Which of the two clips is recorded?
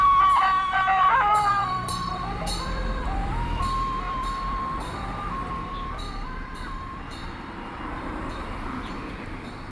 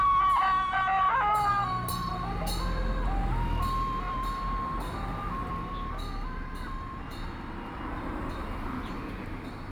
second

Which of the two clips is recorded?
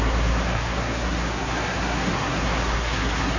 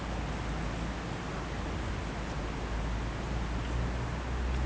second